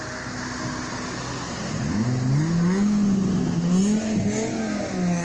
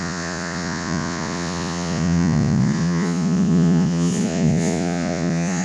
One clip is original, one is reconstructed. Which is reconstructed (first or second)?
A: second